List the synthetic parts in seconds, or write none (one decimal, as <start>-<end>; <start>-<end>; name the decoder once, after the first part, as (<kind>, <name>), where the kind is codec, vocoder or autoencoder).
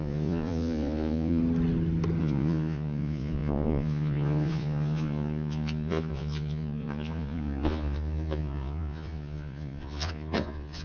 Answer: 0.0-1.4 (vocoder, Vocos); 2.2-10.8